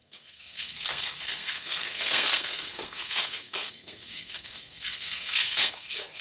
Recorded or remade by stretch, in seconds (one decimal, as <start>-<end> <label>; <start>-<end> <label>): 0.0-6.2 remade